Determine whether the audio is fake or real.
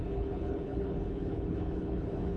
fake